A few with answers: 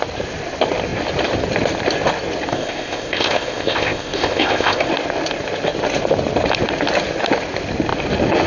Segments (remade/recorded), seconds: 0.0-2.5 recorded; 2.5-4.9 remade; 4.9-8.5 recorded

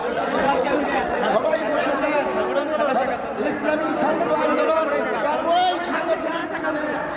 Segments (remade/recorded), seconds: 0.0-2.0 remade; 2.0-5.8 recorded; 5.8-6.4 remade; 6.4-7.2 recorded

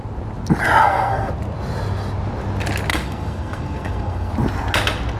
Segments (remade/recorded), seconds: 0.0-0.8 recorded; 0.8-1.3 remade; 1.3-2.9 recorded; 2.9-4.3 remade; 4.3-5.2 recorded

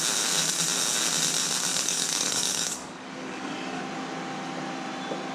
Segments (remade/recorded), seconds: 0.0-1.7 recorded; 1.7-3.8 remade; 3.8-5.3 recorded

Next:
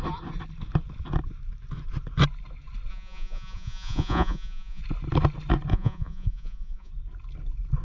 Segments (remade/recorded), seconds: 0.0-2.9 recorded; 2.9-4.8 remade; 4.8-5.7 recorded; 5.7-6.9 remade; 6.9-7.8 recorded